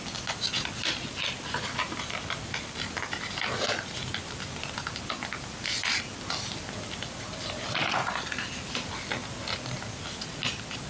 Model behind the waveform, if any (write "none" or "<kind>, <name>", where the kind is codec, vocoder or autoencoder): none